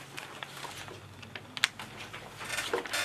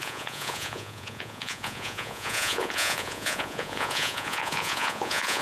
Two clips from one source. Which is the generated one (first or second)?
second